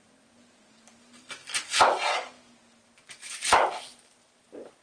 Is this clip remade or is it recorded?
recorded